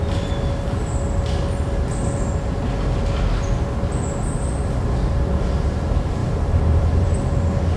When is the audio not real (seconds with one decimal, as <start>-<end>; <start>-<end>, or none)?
6.2-7.2